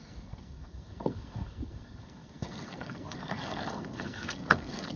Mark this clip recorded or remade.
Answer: remade